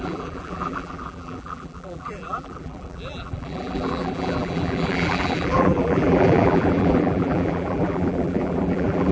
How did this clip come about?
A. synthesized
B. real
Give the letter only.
A